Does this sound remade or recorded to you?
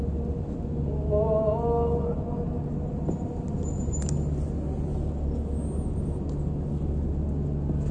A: recorded